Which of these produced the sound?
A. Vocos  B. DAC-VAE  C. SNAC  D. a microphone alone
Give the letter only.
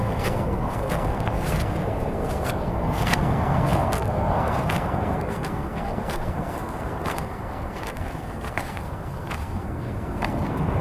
C